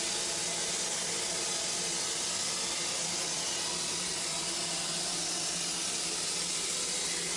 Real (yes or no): yes